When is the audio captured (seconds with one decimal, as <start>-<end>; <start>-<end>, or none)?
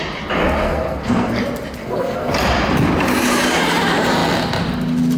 0.0-0.6; 1.4-1.8; 2.3-5.2